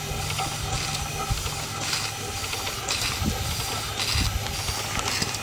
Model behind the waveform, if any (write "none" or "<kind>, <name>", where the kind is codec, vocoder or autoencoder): none